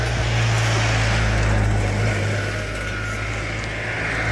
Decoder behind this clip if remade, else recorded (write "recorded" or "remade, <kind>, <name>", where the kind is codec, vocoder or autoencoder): recorded